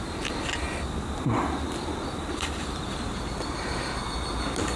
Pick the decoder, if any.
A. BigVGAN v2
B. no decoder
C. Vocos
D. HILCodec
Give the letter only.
B